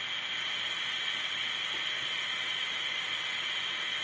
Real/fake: real